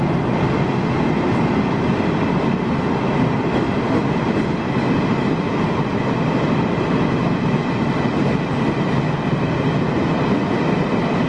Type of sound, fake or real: real